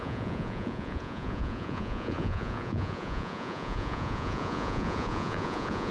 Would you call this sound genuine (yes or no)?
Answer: no